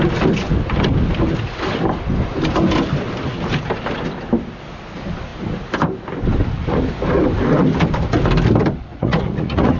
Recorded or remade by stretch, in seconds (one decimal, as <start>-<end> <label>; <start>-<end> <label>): 0.0-8.9 recorded; 8.9-9.8 remade